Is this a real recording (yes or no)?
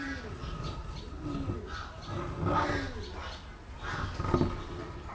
yes